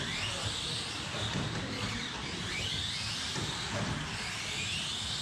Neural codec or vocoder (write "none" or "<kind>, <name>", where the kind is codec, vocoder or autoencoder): vocoder, BigVGAN v2